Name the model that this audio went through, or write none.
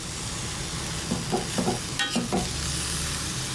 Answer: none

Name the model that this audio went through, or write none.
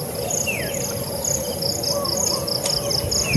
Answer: none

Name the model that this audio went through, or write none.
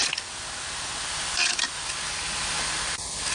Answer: none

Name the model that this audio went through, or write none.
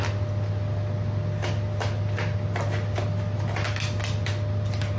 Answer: none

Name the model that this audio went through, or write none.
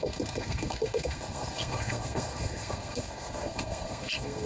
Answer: codec, SNAC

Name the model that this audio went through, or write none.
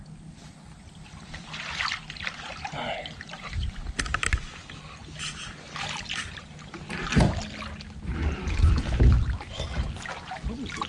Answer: none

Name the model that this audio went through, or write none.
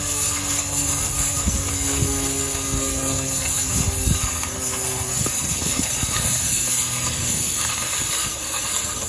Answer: codec, SNAC